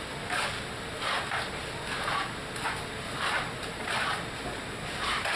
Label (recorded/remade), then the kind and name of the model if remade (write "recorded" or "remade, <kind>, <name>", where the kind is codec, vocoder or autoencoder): recorded